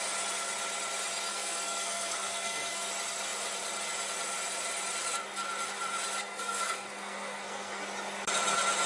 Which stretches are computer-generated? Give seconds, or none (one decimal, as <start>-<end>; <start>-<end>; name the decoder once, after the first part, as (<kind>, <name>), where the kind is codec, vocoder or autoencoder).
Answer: 1.3-2.9 (codec, SNAC); 6.2-7.8

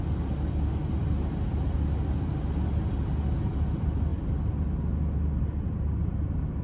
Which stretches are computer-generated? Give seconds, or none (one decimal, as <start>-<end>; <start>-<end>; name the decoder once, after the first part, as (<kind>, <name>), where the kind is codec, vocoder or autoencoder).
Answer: none